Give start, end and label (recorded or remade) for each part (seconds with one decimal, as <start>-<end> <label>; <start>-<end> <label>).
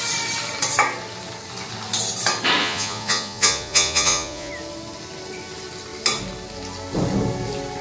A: 0.0-2.6 recorded; 2.6-4.5 remade; 4.5-7.8 recorded